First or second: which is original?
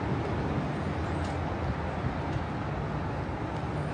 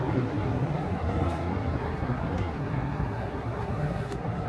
first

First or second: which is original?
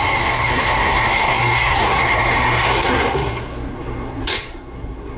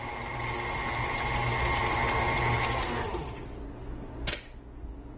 second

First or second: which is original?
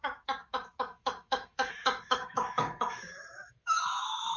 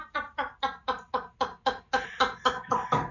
second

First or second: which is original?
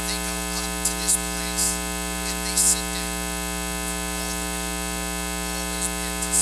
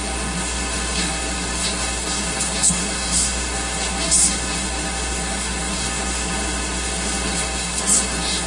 first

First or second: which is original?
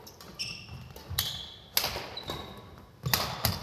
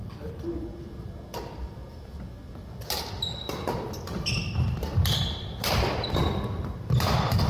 first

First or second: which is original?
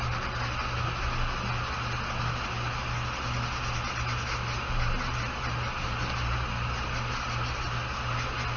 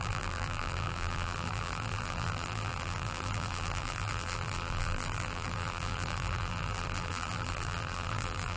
first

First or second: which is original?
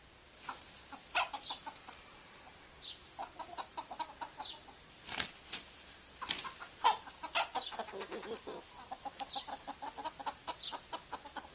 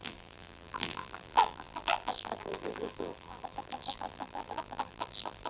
first